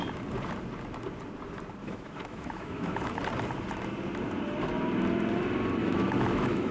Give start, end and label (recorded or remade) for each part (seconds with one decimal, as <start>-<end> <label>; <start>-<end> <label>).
0.0-1.8 recorded; 1.8-3.2 remade; 3.2-5.8 recorded; 5.8-6.7 remade